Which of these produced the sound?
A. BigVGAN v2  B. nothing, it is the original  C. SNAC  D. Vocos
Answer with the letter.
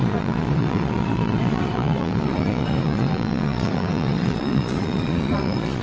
D